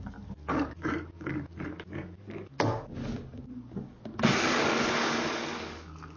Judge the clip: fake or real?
fake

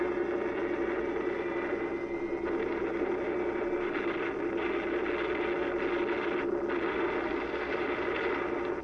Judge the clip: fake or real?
real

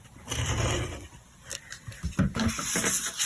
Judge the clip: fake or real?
fake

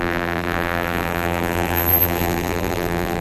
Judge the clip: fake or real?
fake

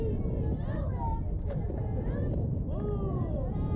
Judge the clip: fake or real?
real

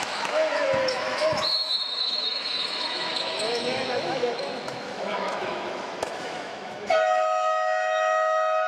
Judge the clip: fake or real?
fake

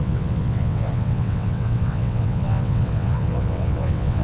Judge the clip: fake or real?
fake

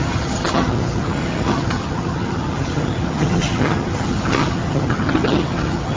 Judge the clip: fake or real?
fake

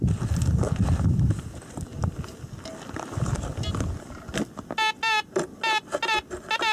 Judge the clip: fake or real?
real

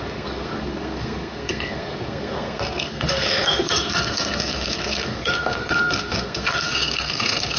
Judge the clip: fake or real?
fake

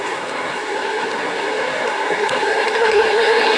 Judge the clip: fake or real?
fake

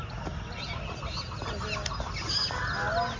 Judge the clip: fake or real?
real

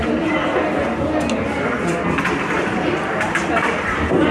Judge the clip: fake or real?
real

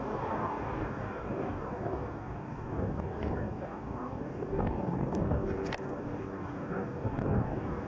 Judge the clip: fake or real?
fake